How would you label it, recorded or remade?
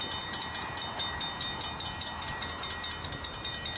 remade